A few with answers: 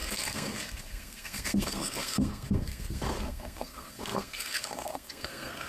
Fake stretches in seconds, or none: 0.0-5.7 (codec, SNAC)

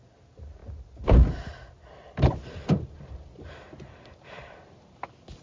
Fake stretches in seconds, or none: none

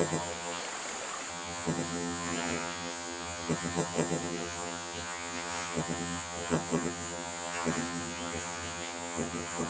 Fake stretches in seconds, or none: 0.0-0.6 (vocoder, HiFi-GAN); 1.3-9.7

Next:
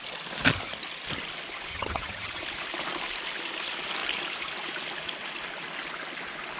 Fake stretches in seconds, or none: 1.7-2.4 (vocoder, HiFi-GAN)

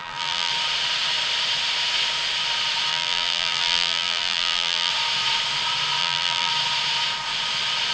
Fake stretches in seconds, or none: 0.0-0.5 (vocoder, BigVGAN v2); 2.9-4.9; 6.0-6.5

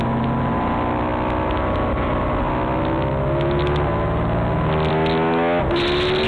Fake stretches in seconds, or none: none

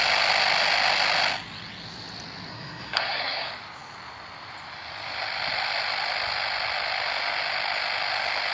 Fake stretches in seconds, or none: 2.5-3.5 (codec, SNAC)